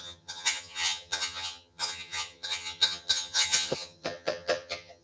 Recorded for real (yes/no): no